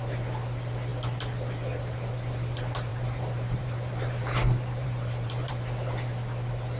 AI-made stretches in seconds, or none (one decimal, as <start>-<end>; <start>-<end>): 2.9-5.5